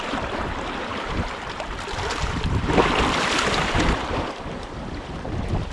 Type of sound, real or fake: fake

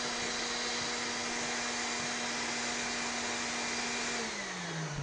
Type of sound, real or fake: real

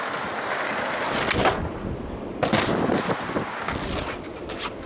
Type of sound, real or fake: real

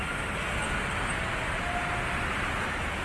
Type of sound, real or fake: real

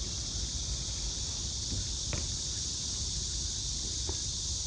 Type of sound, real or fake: real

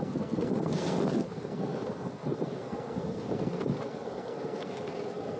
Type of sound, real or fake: fake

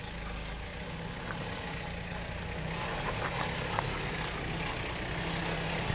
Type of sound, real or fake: real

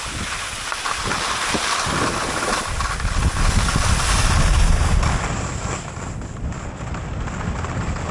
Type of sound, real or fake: real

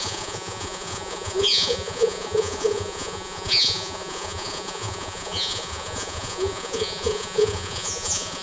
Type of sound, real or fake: fake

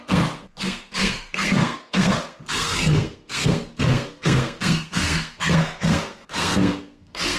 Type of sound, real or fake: fake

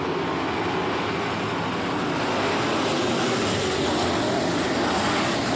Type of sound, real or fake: real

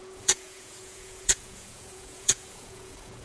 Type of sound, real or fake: fake